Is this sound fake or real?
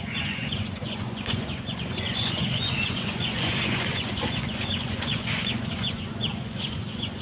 fake